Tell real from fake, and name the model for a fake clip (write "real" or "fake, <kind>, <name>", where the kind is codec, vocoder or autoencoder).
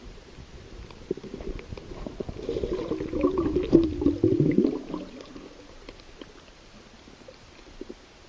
real